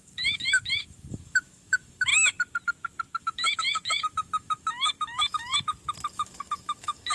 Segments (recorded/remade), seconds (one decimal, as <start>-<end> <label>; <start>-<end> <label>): 0.0-2.1 remade; 2.1-3.2 recorded; 3.2-5.5 remade; 5.5-6.1 recorded; 6.1-7.1 remade